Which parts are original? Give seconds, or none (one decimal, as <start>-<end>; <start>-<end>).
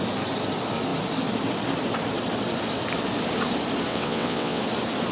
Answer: 0.0-3.9; 4.6-5.1